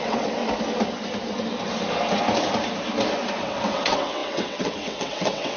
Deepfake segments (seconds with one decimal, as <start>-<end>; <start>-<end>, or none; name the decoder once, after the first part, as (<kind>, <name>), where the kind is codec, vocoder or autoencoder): 0.0-0.4 (vocoder, WaveNeXt); 3.4-5.6